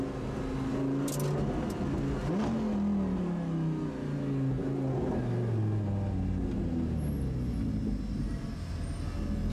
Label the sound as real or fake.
real